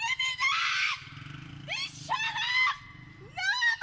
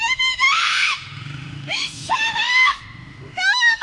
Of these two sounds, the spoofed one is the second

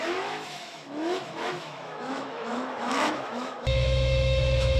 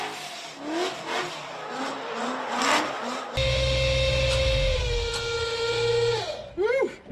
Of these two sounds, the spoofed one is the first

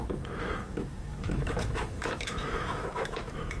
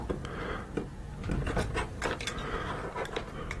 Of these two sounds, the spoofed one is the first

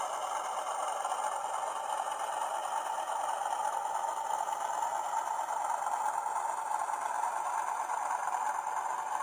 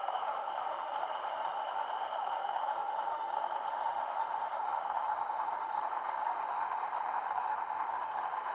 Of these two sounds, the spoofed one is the second